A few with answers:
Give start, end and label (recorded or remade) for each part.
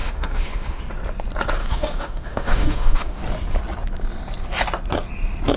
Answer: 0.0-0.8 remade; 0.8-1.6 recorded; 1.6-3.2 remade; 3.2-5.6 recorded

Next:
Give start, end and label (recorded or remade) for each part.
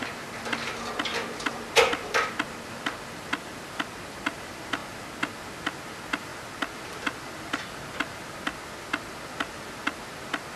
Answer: 0.0-10.6 recorded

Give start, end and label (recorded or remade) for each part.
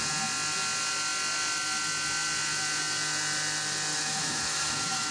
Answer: 0.0-3.9 recorded; 3.9-5.1 remade